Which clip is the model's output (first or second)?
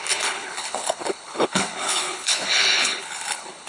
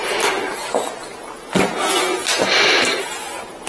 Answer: first